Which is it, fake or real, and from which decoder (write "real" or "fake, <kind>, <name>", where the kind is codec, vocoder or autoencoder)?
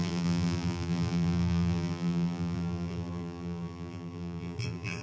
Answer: fake, vocoder, BigVGAN v2